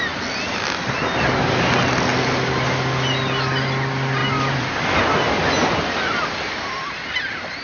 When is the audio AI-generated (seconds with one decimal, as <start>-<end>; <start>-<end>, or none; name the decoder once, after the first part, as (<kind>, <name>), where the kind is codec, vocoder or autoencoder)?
none